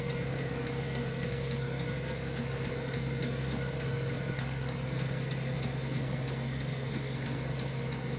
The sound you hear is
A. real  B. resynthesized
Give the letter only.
B